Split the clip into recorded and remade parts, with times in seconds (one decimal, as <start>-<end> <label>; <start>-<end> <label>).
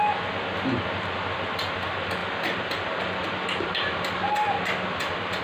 0.0-5.4 recorded